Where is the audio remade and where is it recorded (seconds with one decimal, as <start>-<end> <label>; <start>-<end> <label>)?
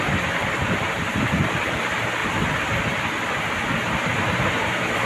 0.0-5.1 recorded